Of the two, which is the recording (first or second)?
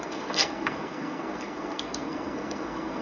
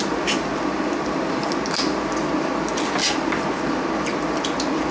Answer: second